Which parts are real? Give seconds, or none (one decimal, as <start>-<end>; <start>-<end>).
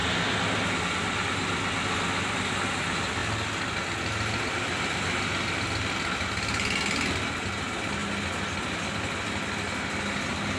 0.0-10.6